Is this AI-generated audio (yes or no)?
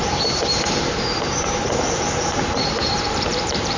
yes